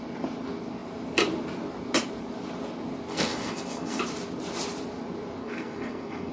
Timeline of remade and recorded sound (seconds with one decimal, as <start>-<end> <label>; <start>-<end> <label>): 0.0-3.1 recorded; 3.1-4.0 remade; 4.0-5.4 recorded; 5.4-6.3 remade